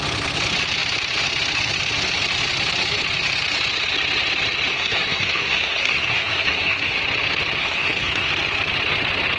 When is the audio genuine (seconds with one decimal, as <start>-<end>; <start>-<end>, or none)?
0.0-4.7; 7.0-7.6; 8.3-9.4